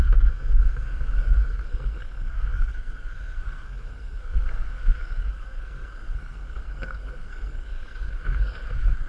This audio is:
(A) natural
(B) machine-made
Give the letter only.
B